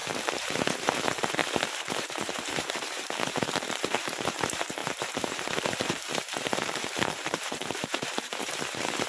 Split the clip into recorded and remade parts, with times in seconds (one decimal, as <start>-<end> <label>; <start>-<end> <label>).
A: 0.0-1.4 remade; 1.4-1.9 recorded; 1.9-9.1 remade